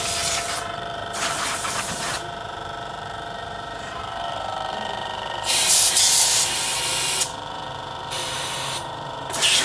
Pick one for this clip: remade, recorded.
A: remade